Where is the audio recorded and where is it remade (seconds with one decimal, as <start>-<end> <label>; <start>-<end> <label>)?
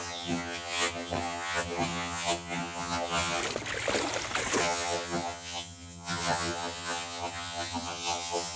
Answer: 0.0-3.4 remade; 3.4-4.6 recorded; 4.6-8.6 remade